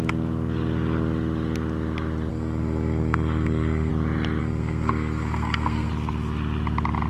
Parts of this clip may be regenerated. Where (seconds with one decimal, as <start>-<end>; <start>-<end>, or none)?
2.3-3.9; 4.4-5.9